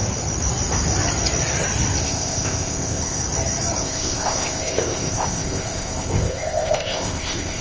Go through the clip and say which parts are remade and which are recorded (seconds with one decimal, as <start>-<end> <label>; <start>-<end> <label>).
0.0-2.0 recorded; 2.0-3.2 remade; 3.2-3.8 recorded; 3.8-7.6 remade